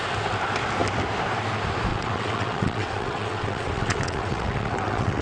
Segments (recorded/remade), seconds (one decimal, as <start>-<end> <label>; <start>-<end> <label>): 0.0-1.9 recorded; 1.9-5.2 remade